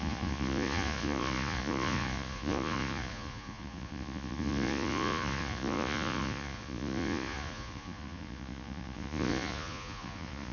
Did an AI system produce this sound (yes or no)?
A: yes